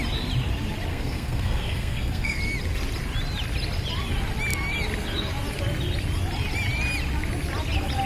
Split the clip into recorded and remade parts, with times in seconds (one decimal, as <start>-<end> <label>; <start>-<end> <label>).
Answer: 0.0-0.9 recorded; 0.9-2.4 remade; 2.4-8.1 recorded

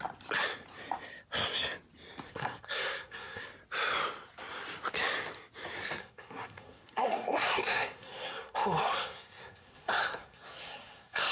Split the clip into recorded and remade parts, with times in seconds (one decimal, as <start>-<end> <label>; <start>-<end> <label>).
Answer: 0.0-2.3 recorded; 2.3-3.4 remade; 3.4-6.0 recorded; 6.0-11.3 remade